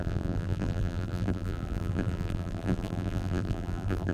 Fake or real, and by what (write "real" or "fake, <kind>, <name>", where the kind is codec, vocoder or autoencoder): fake, vocoder, BigVGAN v2